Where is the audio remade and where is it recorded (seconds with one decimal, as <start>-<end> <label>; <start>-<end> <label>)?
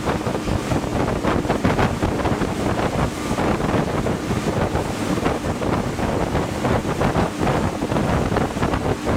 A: 0.0-9.2 recorded